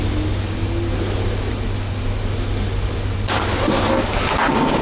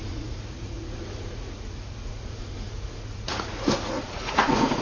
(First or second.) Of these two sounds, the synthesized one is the second